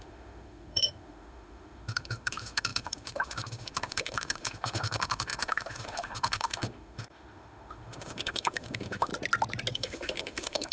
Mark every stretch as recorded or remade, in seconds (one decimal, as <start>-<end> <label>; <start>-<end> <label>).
0.0-9.1 remade; 9.1-9.7 recorded; 9.7-10.7 remade